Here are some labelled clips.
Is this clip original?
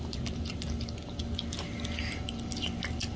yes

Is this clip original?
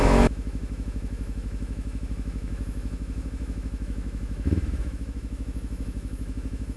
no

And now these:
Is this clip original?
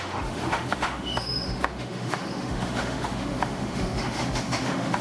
no